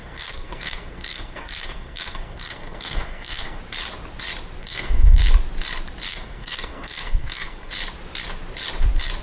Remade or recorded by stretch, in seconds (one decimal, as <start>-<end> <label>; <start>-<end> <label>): 0.0-3.6 remade; 3.6-4.6 recorded; 4.6-5.3 remade; 5.3-6.1 recorded; 6.1-7.7 remade; 7.7-9.2 recorded